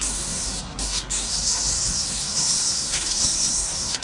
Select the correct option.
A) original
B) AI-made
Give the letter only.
B